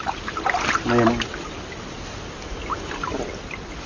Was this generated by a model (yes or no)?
no